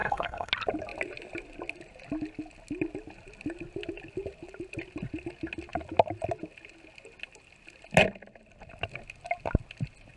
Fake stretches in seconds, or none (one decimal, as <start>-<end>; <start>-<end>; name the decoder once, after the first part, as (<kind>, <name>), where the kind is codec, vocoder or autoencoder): 0.0-0.5 (codec, SNAC)